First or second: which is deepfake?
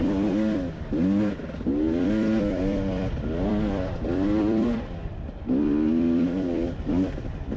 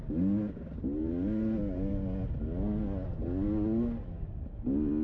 first